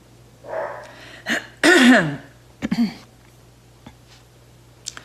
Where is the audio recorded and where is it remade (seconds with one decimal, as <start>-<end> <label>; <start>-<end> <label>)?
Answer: 0.0-5.0 recorded